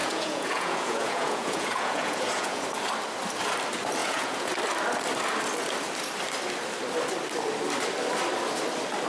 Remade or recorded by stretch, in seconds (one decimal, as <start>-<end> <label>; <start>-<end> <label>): 0.0-2.6 remade; 2.6-4.0 recorded; 4.0-4.5 remade; 4.5-9.1 recorded